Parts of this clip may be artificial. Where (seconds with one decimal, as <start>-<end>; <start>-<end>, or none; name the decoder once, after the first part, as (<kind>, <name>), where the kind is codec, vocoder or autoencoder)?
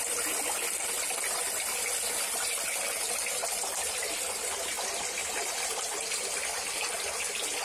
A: 5.2-5.8 (vocoder, BigVGAN v2)